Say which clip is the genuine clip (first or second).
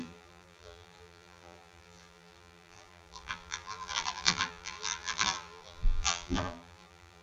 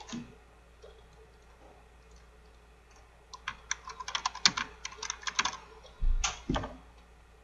second